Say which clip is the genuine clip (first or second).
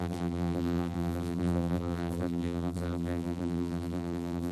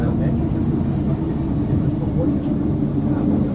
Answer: second